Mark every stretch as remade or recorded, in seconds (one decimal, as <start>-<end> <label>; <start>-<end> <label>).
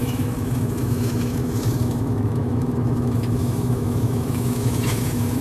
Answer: 0.0-5.4 remade